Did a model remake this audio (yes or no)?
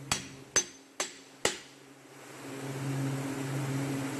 no